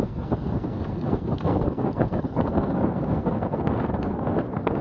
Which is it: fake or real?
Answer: fake